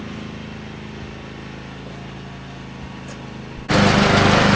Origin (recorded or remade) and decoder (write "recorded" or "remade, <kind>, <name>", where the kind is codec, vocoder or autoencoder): recorded